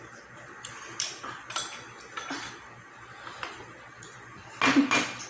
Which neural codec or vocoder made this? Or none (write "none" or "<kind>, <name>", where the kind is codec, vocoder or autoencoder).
none